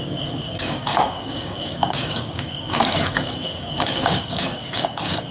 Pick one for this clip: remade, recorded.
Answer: remade